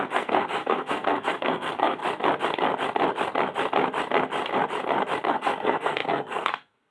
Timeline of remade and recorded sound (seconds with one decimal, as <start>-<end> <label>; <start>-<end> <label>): 0.0-2.0 remade; 2.0-5.3 recorded; 5.3-6.9 remade